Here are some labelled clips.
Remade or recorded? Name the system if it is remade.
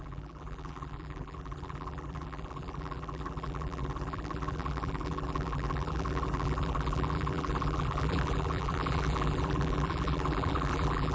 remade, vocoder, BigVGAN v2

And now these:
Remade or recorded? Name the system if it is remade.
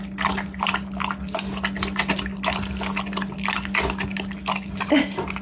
recorded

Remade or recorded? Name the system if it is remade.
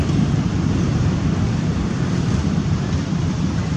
remade, vocoder, BigVGAN v2